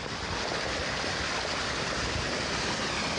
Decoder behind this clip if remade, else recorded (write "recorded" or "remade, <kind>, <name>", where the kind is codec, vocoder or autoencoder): recorded